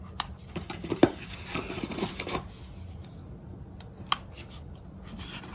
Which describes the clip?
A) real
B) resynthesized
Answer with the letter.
A